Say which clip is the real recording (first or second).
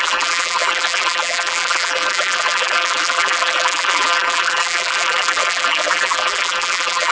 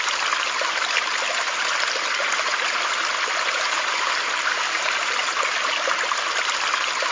second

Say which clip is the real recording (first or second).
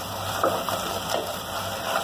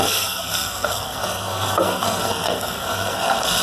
first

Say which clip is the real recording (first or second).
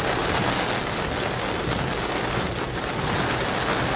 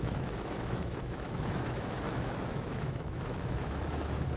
first